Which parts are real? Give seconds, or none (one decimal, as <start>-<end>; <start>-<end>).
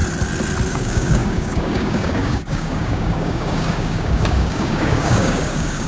0.0-0.7